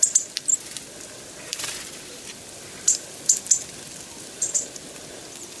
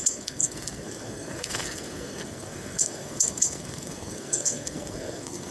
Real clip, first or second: first